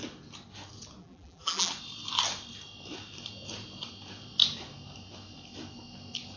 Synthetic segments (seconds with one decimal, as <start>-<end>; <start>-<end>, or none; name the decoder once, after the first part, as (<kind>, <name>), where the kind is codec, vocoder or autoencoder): 1.0-1.7 (vocoder, BigVGAN v2)